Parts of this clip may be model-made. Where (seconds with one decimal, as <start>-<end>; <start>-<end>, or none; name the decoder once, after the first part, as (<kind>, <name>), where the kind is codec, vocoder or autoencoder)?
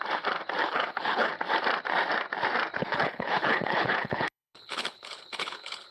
0.6-1.3 (codec, HILCodec); 2.8-5.9